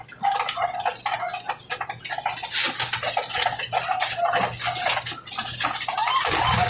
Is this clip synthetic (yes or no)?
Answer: no